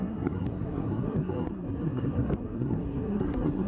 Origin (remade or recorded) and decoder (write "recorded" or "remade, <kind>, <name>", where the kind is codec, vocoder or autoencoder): remade, codec, SNAC